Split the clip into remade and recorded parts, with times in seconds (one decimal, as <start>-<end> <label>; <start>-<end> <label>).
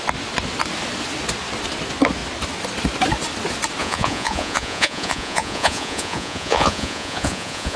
0.0-3.8 recorded; 3.8-7.8 remade